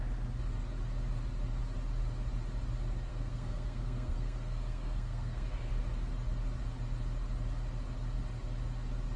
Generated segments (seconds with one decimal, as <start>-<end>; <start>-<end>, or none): 3.1-5.7